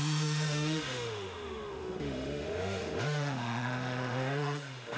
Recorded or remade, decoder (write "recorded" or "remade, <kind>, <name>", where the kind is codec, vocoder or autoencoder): remade, autoencoder, DAC-VAE